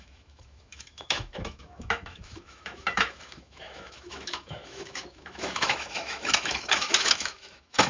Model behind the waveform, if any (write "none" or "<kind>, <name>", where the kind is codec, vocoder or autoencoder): autoencoder, DAC-VAE